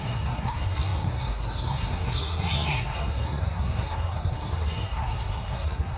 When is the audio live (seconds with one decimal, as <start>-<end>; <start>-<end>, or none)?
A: none